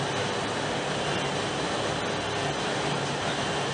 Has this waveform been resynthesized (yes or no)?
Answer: no